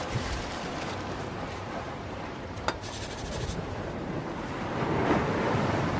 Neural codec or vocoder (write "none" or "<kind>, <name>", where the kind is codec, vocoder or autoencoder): vocoder, BigVGAN v2